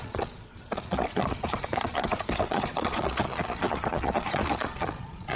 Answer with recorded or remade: remade